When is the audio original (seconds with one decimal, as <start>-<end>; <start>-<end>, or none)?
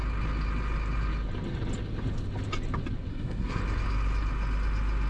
0.0-3.1; 3.6-5.1